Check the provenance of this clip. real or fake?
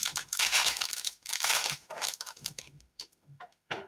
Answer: fake